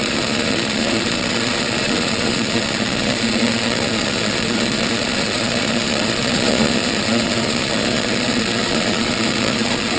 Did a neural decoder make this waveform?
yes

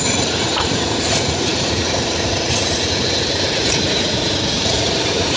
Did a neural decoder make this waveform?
yes